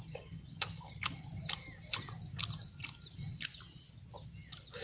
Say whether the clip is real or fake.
real